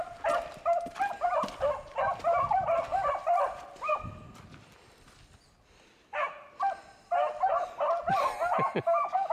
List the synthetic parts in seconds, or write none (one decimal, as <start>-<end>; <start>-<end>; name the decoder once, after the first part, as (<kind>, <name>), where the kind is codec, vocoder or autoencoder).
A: none